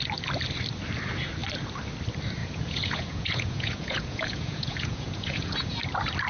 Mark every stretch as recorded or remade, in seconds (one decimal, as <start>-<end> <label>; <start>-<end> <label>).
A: 0.0-2.4 recorded; 2.4-5.8 remade; 5.8-6.3 recorded